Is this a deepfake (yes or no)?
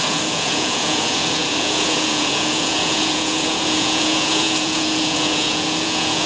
yes